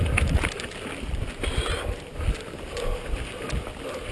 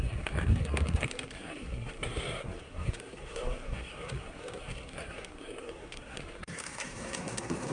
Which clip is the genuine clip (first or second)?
first